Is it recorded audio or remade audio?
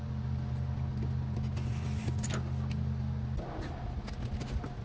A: recorded